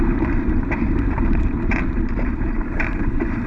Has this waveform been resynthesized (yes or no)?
yes